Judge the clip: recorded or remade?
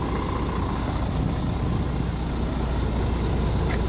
recorded